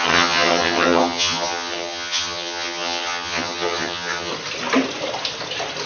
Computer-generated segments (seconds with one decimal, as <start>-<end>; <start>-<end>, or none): 0.0-4.3